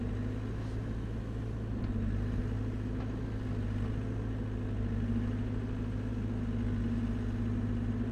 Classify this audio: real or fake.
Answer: real